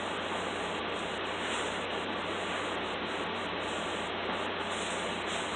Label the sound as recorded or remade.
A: recorded